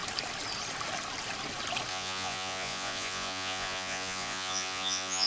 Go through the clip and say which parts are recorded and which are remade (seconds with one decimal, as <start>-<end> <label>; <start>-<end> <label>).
0.0-1.9 recorded; 1.9-5.3 remade